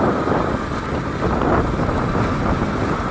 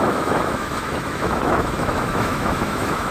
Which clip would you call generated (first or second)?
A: second